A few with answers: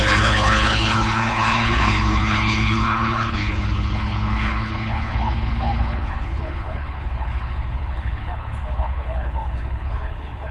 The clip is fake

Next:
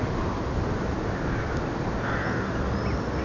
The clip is real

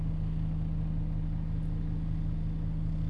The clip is real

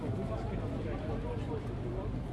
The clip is real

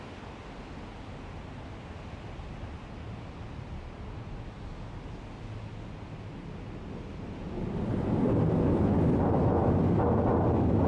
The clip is real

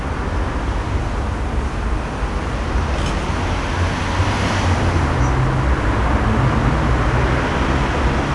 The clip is real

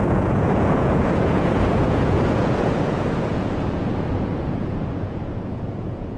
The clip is fake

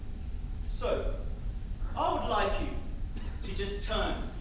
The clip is real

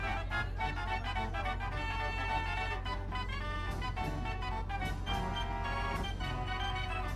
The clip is real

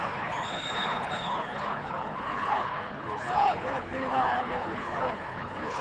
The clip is fake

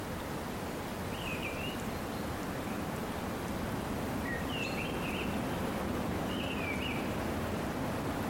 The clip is real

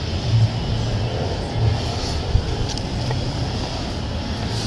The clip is real